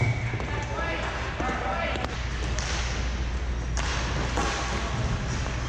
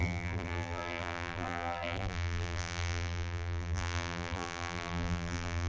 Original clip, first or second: first